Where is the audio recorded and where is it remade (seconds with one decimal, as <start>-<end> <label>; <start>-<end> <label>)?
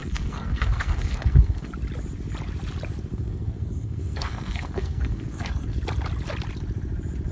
0.0-1.7 remade; 1.7-3.1 recorded; 3.1-5.8 remade; 5.8-7.3 recorded